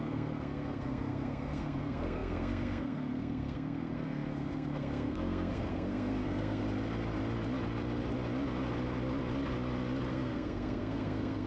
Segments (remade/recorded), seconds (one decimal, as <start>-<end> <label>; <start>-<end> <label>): 0.0-6.6 remade; 6.6-10.1 recorded; 10.1-11.5 remade